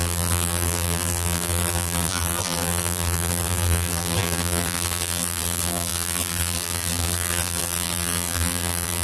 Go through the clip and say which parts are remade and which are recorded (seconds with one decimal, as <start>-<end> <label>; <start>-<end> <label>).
0.0-9.0 remade